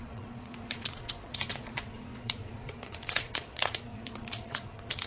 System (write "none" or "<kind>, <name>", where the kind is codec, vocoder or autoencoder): vocoder, Vocos